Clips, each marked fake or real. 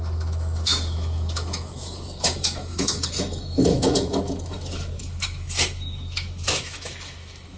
fake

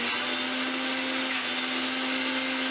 real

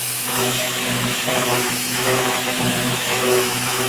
fake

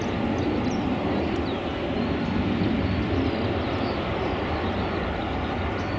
real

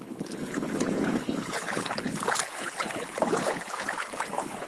fake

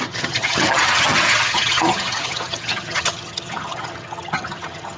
fake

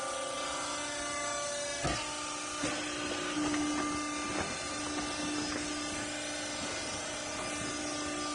real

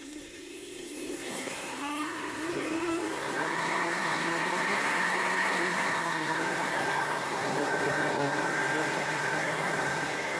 fake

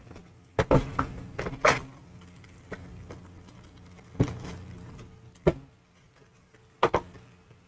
real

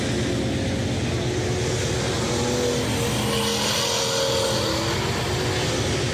real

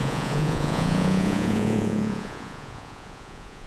fake